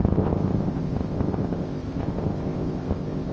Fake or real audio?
fake